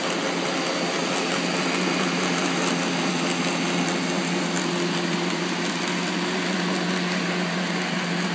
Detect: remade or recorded recorded